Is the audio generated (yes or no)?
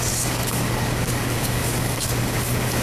yes